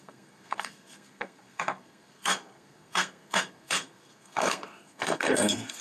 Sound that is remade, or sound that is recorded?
remade